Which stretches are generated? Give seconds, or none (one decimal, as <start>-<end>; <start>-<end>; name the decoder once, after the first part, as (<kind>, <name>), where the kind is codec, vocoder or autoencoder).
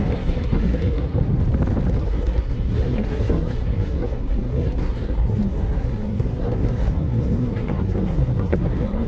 0.0-1.4 (codec, SNAC); 2.0-9.1